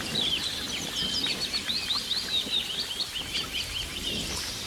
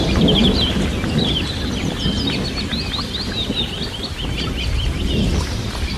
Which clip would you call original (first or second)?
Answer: second